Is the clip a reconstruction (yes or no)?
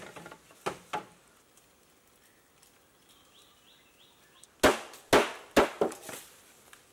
no